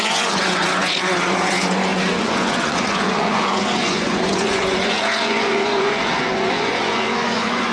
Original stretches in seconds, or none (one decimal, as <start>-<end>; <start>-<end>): none